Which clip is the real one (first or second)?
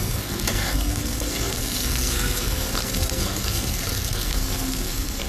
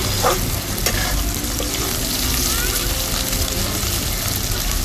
second